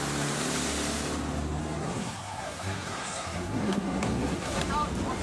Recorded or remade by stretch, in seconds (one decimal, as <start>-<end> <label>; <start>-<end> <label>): 0.0-1.6 recorded; 1.6-4.7 remade; 4.7-5.2 recorded